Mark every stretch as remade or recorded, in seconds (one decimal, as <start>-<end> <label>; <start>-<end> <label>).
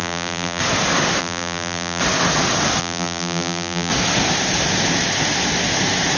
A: 0.0-0.6 remade; 0.6-1.2 recorded; 1.2-2.0 remade; 2.0-2.8 recorded; 2.8-3.9 remade; 3.9-6.2 recorded